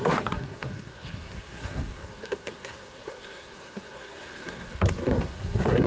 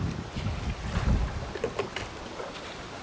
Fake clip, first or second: first